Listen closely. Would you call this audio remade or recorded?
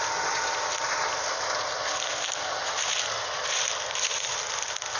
recorded